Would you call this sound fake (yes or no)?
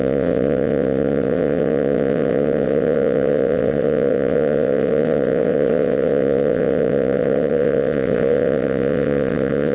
yes